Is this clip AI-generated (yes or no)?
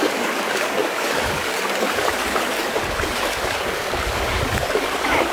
yes